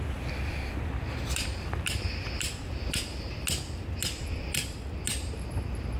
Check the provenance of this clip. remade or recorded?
recorded